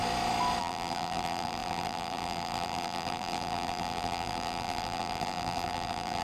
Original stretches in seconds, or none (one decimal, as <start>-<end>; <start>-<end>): 0.0-0.6